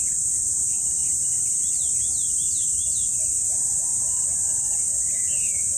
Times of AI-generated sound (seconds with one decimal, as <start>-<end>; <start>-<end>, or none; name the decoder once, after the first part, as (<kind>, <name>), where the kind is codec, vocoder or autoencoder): 1.0-4.5 (vocoder, BigVGAN v2)

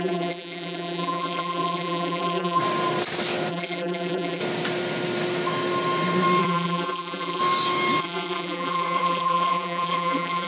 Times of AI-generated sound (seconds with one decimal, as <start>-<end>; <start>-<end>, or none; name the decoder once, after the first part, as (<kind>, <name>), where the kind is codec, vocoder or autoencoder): 0.0-2.6 (vocoder, BigVGAN v2); 3.5-4.4; 6.4-7.4; 8.0-10.5

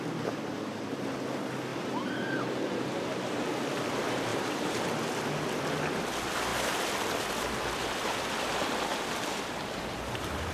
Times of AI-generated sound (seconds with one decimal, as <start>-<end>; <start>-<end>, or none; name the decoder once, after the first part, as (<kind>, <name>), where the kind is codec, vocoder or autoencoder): 1.7-3.2 (vocoder, BigVGAN v2); 4.3-4.9